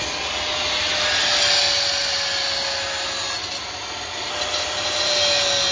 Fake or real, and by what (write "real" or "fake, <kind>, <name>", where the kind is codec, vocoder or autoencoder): real